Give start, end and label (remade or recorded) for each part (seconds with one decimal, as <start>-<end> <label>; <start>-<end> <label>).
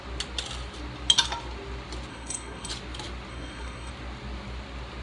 0.0-2.1 recorded; 2.1-2.7 remade; 2.7-3.3 recorded; 3.3-3.9 remade; 3.9-5.0 recorded